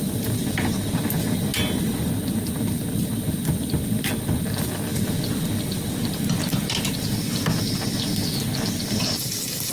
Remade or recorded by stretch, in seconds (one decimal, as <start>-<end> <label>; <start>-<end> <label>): 0.0-9.7 recorded